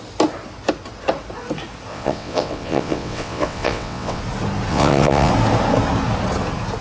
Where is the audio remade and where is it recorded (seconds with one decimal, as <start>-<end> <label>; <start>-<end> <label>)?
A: 0.0-1.9 recorded; 1.9-4.2 remade; 4.2-4.7 recorded; 4.7-5.3 remade; 5.3-6.8 recorded